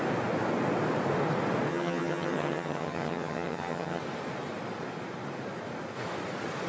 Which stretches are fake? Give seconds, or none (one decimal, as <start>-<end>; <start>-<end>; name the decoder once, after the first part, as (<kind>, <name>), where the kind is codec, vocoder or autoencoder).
1.7-4.0 (vocoder, HiFi-GAN)